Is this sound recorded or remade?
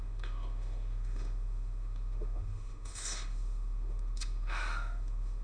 remade